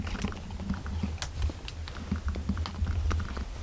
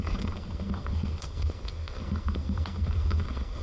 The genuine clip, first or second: first